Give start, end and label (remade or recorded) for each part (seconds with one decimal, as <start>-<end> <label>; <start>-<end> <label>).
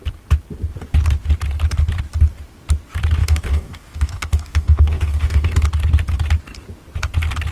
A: 0.0-3.2 recorded; 3.2-5.5 remade; 5.5-7.5 recorded